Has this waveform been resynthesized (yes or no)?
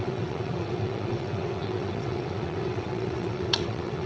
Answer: yes